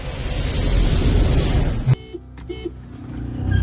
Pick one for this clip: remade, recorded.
recorded